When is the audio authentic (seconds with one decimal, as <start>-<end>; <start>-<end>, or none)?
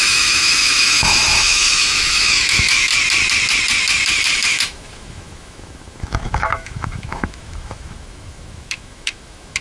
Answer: 2.9-4.5